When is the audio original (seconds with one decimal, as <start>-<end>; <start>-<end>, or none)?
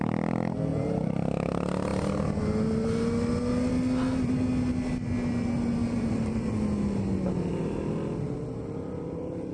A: 0.0-0.7; 1.5-5.8; 6.5-9.5